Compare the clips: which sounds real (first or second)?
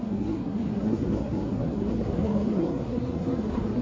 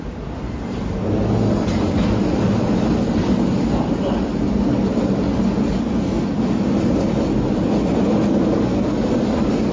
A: second